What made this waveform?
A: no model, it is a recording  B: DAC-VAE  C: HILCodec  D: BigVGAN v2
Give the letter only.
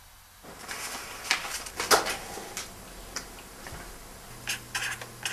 A